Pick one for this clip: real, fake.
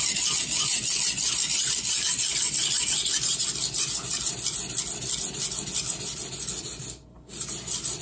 real